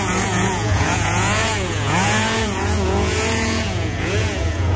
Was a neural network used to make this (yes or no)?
yes